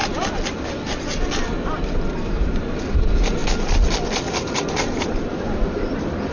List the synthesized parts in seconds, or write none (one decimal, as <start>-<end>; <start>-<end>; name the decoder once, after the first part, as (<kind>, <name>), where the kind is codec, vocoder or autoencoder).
none